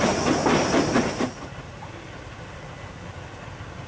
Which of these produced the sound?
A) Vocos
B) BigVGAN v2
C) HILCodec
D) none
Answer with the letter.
B